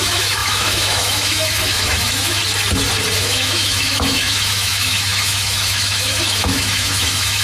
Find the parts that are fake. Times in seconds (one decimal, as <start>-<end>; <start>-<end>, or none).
0.0-2.4; 3.2-7.4

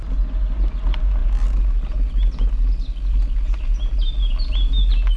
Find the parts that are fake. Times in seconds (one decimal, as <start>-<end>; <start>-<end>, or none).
none

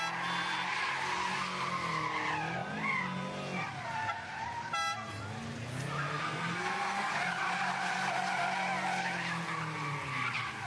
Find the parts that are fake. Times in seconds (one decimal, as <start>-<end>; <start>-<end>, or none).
6.0-7.1

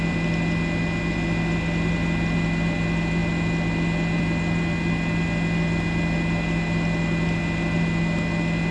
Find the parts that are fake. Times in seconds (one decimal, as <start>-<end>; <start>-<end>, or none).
none

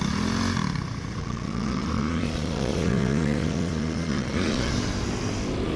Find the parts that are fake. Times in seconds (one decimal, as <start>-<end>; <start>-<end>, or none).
1.2-4.7

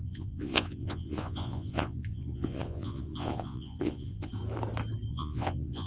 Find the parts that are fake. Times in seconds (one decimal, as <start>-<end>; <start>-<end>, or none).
0.0-4.3; 5.1-5.9

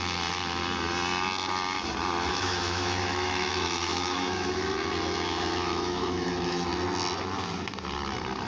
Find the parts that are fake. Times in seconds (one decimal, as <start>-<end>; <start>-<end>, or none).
0.0-0.6; 2.3-6.7

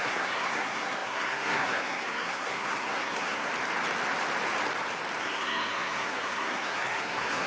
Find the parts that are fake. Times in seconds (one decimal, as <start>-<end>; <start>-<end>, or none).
0.0-3.5; 5.2-7.5